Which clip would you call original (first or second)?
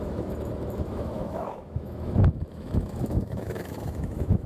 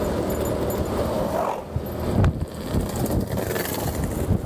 second